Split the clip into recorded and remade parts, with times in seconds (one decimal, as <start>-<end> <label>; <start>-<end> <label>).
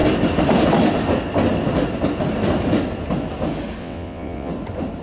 0.0-3.8 recorded; 3.8-4.5 remade; 4.5-5.0 recorded